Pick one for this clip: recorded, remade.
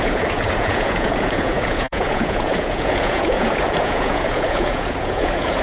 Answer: remade